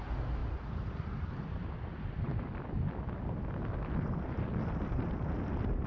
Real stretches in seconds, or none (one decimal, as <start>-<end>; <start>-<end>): 0.0-0.4; 1.3-2.3